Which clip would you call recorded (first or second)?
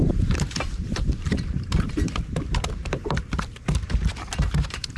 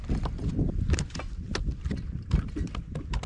second